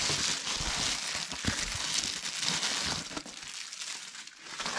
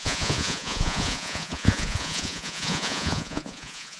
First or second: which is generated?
second